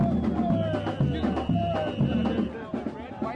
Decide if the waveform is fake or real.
real